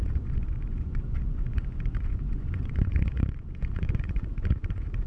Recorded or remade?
remade